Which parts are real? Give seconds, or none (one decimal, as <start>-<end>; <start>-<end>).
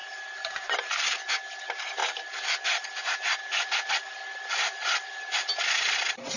1.3-6.4